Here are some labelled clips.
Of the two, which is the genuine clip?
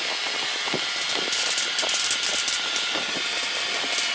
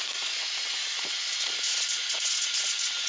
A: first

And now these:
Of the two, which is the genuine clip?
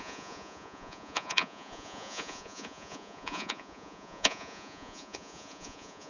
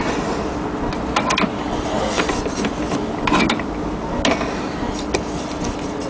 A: second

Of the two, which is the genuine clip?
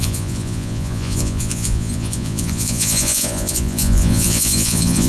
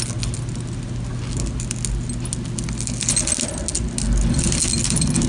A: second